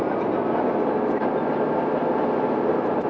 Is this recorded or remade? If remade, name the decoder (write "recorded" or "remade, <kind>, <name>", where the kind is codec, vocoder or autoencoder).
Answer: recorded